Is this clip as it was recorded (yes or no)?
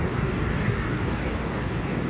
no